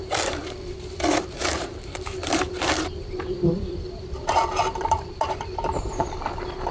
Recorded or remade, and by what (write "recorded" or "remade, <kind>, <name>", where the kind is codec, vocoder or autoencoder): remade, vocoder, BigVGAN v2